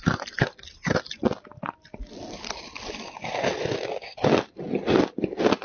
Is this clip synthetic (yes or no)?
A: no